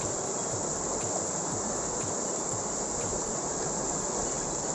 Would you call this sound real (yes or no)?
yes